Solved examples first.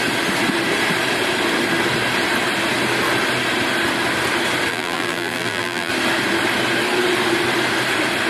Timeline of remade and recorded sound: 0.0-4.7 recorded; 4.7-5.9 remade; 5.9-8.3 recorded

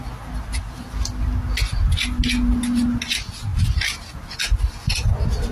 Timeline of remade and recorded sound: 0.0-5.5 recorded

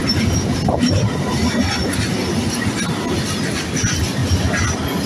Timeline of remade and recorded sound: 0.0-5.1 recorded

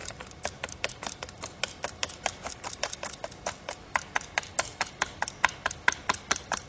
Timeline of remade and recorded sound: 0.0-1.4 remade; 1.4-3.9 recorded; 3.9-4.9 remade; 4.9-6.7 recorded

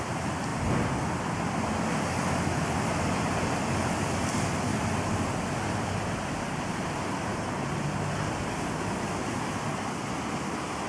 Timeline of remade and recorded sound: 0.0-4.7 recorded; 4.7-8.4 remade; 8.4-10.9 recorded

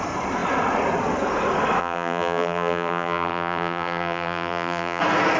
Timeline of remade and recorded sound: 0.0-1.8 recorded; 1.8-5.0 remade; 5.0-5.4 recorded

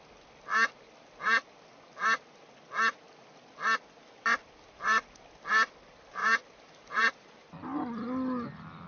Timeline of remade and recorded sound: 0.0-6.2 recorded; 6.2-7.5 remade; 7.5-8.9 recorded

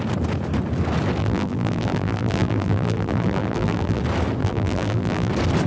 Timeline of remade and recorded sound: 0.0-1.2 recorded; 1.2-4.0 remade; 4.0-4.4 recorded; 4.4-5.3 remade; 5.3-5.7 recorded